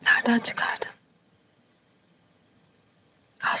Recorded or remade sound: remade